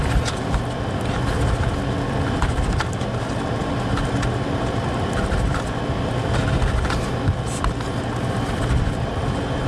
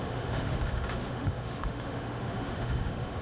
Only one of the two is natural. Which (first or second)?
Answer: first